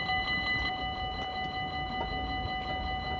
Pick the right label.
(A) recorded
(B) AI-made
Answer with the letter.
A